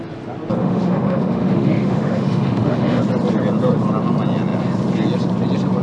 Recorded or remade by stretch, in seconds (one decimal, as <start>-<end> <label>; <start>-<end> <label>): 0.0-0.6 recorded; 0.6-3.0 remade; 3.0-5.8 recorded